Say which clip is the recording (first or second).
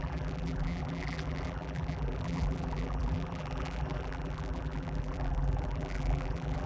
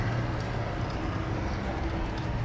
second